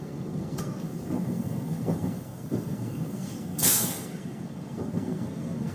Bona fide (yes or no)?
no